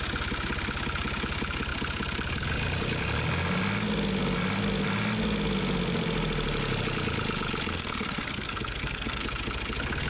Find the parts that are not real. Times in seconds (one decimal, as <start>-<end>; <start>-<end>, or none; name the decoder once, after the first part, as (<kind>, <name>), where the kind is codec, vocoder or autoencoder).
7.7-9.2 (codec, SNAC)